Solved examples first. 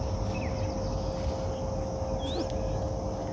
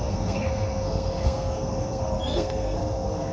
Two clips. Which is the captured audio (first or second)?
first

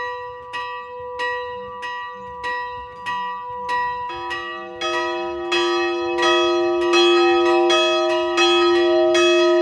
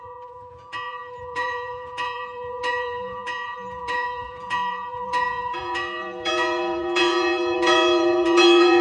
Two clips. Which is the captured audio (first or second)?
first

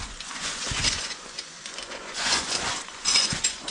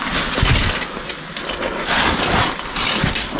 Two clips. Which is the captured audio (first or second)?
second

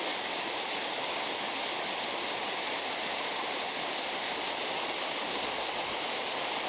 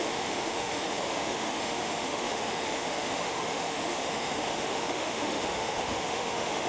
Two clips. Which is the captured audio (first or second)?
first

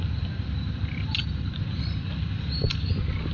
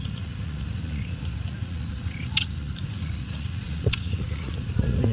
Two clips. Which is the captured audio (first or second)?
first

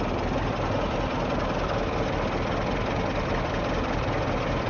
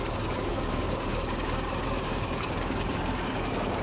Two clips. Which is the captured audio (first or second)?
first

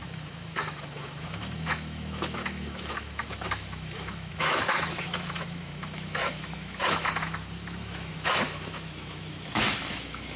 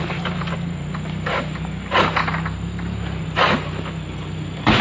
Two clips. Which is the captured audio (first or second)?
second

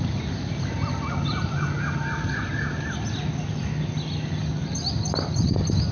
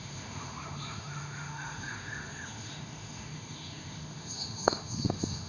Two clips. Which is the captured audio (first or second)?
first